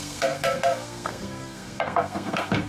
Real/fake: fake